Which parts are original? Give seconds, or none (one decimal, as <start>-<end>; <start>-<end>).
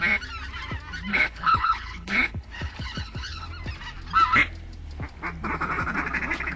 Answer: 0.0-1.1; 3.5-6.6